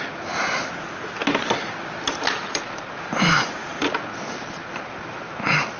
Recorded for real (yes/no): yes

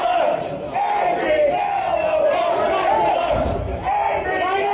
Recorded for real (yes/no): no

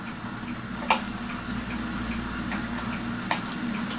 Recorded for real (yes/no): yes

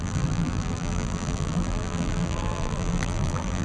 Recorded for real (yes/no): no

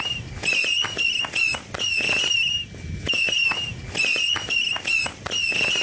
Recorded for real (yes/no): yes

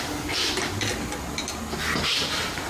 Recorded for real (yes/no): yes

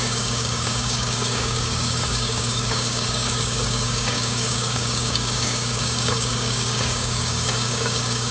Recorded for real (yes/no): no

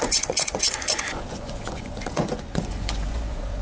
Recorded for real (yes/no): no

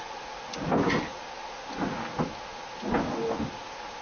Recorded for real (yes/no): yes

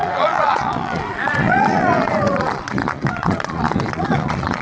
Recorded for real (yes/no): no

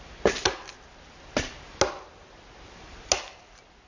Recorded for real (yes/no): yes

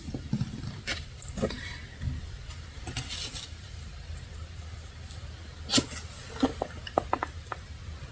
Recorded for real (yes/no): yes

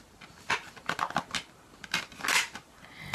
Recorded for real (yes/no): yes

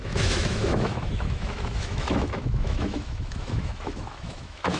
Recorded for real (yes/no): no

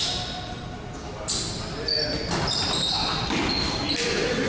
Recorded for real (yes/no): yes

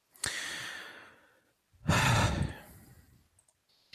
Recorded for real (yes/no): yes